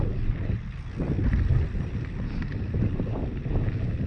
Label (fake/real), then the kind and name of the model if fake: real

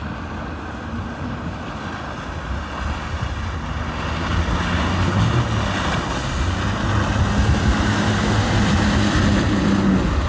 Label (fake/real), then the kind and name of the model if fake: real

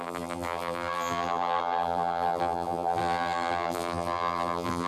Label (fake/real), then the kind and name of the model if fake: fake, vocoder, BigVGAN v2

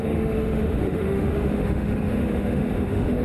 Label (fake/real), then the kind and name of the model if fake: fake, autoencoder, DAC-VAE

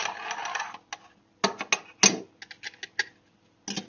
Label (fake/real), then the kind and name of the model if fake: real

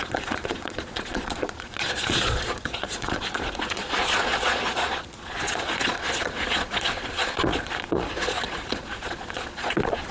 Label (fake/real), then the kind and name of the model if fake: fake, vocoder, Vocos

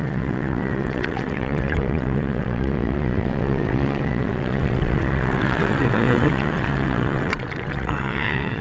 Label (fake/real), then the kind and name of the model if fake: fake, vocoder, WaveNeXt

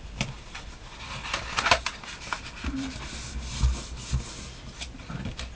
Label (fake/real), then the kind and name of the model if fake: real